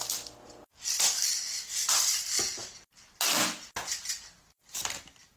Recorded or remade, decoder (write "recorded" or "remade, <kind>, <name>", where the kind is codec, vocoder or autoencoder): recorded